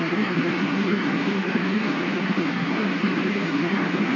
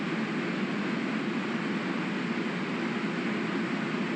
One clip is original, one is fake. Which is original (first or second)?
second